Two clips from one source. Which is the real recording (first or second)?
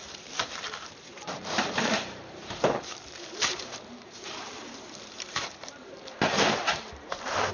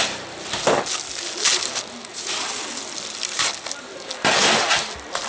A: second